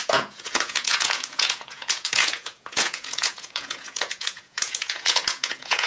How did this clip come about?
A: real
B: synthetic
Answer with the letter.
B